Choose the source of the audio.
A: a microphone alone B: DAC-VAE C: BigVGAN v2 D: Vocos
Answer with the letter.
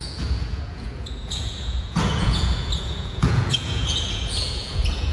D